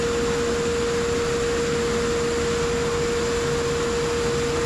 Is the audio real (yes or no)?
yes